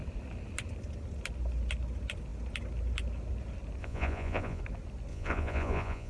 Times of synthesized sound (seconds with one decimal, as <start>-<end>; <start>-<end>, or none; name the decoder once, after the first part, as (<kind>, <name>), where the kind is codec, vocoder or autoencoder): 3.8-4.6 (vocoder, Vocos); 5.1-6.1